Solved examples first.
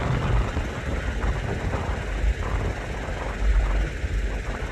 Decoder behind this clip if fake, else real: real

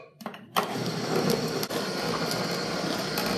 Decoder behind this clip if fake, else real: real